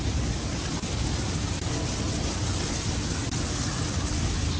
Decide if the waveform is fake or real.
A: real